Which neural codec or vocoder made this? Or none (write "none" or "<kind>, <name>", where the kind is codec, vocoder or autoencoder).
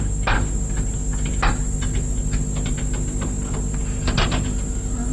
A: none